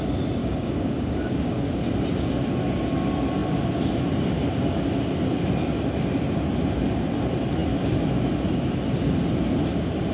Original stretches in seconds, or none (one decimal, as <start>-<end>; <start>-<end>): 0.0-0.4; 1.7-10.1